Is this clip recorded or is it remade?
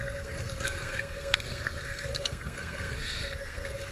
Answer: remade